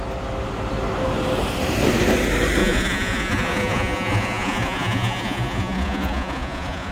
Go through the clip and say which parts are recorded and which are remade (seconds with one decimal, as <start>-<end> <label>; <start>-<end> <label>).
0.0-2.6 recorded; 2.6-6.9 remade